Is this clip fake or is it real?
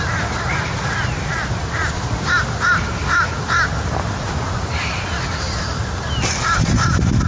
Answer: real